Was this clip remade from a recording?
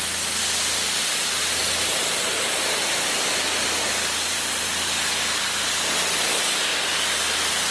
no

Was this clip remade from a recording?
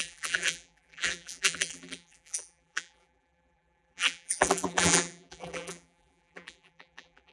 yes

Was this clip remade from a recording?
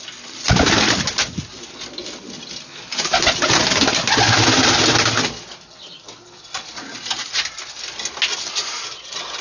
no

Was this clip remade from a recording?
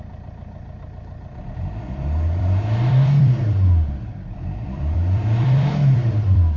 yes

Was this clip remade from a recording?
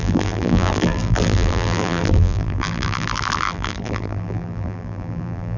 yes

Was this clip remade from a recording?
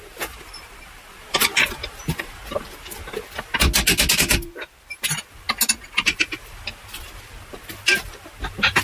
no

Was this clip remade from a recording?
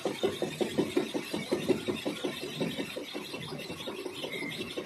no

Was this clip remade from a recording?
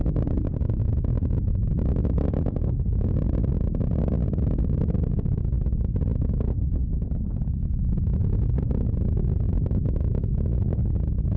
no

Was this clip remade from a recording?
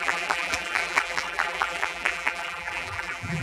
yes